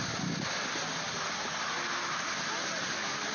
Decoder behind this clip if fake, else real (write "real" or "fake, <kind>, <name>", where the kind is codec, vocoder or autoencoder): real